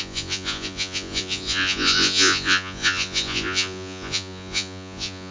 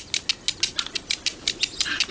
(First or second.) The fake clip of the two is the first